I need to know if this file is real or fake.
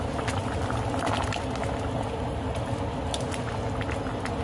real